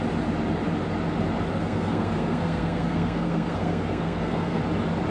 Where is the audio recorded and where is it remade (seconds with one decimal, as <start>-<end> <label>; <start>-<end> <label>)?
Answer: 0.0-1.5 recorded; 1.5-4.6 remade; 4.6-5.1 recorded